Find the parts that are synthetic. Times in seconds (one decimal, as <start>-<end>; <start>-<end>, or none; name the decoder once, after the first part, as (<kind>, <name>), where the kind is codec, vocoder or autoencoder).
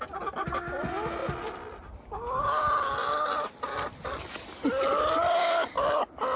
none